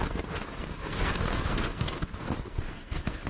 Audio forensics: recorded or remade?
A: remade